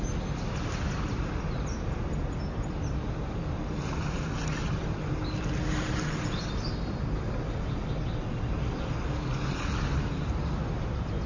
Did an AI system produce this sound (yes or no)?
no